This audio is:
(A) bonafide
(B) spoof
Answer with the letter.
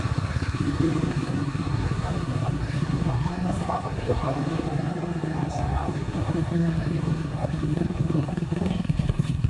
B